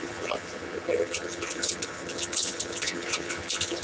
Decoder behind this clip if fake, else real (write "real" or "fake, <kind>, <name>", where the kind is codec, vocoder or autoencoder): fake, vocoder, HiFi-GAN